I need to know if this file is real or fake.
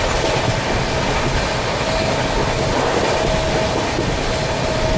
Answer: real